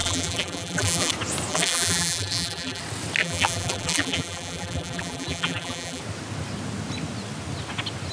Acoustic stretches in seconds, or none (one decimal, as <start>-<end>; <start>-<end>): 1.1-1.5; 2.8-3.2; 6.0-8.1